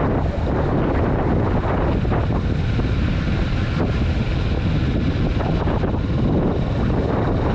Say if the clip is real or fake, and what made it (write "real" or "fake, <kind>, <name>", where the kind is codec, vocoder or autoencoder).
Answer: real